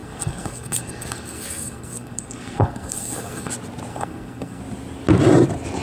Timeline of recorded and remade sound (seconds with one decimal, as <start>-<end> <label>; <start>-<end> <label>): 0.0-3.5 remade; 3.5-3.9 recorded; 3.9-4.6 remade; 4.6-5.8 recorded

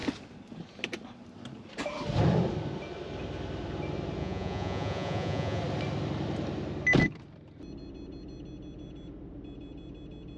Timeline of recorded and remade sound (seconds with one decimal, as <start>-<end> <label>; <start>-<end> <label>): 0.0-4.2 recorded; 4.2-5.6 remade; 5.6-10.4 recorded